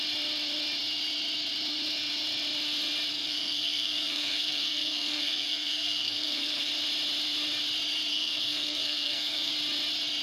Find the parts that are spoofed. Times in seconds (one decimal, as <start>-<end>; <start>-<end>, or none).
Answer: 3.1-6.7; 8.1-9.5

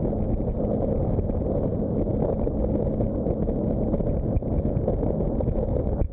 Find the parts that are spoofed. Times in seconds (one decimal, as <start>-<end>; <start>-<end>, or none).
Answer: none

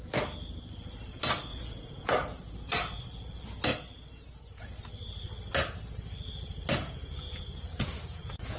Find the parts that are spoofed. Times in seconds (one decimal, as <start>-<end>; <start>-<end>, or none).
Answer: 1.5-2.1; 6.8-8.6

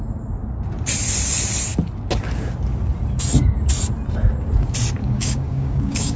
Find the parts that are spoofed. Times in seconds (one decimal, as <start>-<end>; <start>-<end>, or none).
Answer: 5.0-6.2

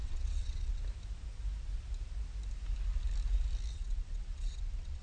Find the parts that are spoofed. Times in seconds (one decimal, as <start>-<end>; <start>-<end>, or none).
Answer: 0.0-0.8; 3.7-5.0

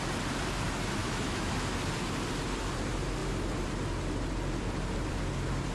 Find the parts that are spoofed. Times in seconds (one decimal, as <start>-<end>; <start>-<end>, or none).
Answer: 1.0-1.5